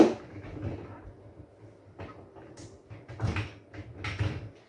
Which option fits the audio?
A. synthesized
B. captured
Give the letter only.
B